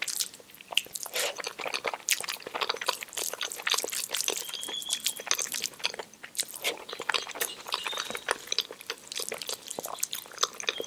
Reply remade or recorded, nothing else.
recorded